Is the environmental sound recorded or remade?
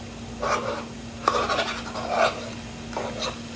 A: recorded